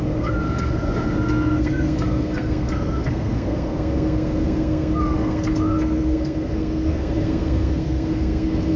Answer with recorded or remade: remade